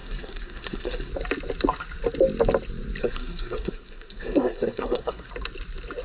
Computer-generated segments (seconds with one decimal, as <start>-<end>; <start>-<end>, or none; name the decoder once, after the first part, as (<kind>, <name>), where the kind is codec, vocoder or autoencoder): 0.0-1.1 (codec, SNAC); 3.0-5.3